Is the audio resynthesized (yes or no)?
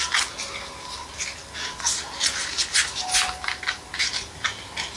no